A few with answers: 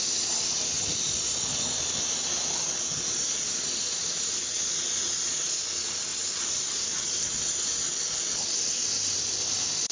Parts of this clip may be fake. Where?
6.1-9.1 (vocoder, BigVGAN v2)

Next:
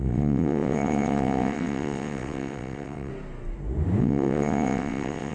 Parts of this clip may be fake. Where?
0.0-3.1 (vocoder, WaveNeXt); 4.0-5.3

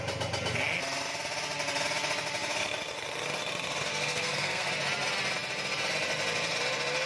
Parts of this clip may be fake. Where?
3.9-4.7 (codec, SNAC)

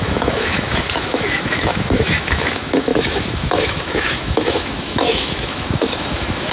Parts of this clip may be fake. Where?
0.0-6.5 (autoencoder, DAC-VAE)

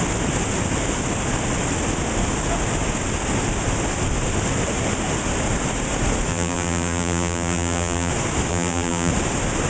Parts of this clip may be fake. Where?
6.3-8.1 (vocoder, BigVGAN v2); 8.5-9.1

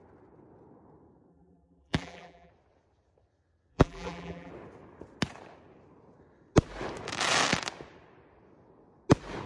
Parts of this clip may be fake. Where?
1.3-2.5 (vocoder, BigVGAN v2); 3.7-4.5